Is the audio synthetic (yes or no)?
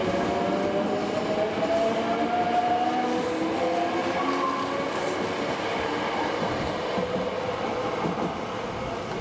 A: no